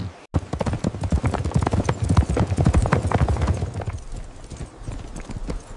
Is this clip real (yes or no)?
yes